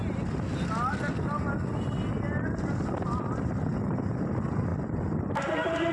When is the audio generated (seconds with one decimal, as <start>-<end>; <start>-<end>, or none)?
none